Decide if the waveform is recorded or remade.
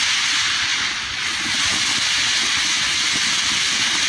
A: recorded